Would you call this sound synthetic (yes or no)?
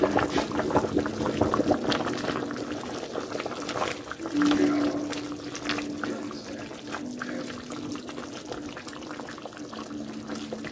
no